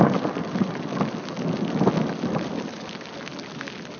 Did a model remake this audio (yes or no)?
no